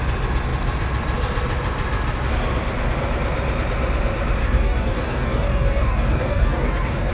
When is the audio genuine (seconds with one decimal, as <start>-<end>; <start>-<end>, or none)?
0.0-4.4